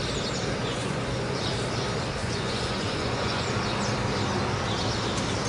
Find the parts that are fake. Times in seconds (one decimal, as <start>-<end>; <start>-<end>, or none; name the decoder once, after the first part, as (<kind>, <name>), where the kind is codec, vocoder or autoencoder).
0.6-1.4 (vocoder, Vocos); 2.2-3.5